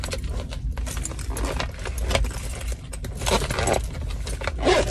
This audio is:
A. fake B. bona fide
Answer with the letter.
B